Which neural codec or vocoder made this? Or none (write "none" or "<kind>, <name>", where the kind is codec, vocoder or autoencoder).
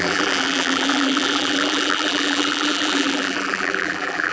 vocoder, BigVGAN v2